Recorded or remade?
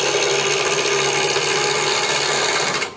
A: recorded